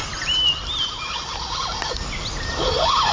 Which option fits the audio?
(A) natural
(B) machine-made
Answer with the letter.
A